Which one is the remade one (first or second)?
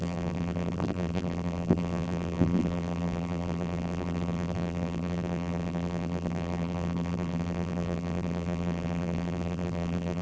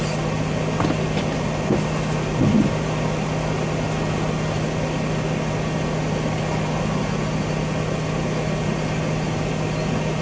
first